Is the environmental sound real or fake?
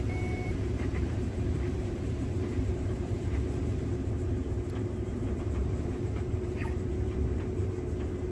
fake